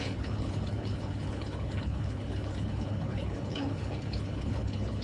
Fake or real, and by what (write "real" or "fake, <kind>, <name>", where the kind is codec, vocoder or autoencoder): fake, codec, HILCodec